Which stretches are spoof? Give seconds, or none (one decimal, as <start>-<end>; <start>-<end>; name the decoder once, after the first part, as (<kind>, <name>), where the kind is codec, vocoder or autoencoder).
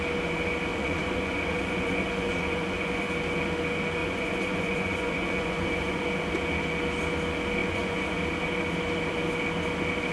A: 0.7-3.0 (vocoder, Vocos); 4.0-6.0; 7.6-8.2